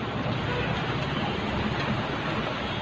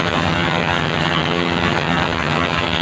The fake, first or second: second